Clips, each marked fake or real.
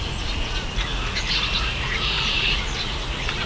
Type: fake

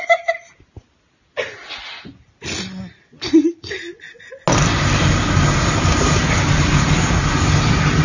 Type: real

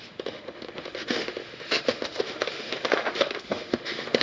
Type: fake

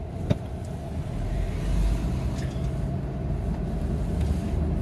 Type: real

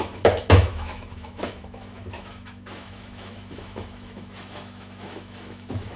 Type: fake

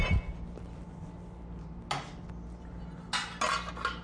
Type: real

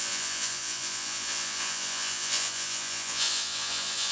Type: fake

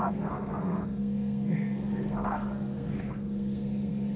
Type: fake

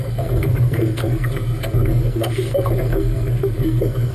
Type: fake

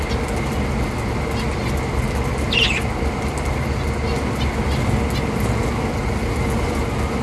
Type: real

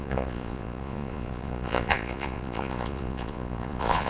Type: fake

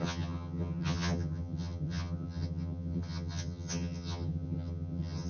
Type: fake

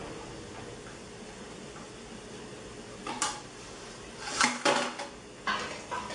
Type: real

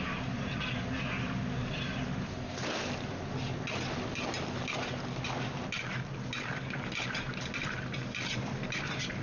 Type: real